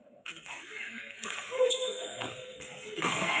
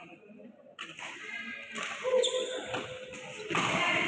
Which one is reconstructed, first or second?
first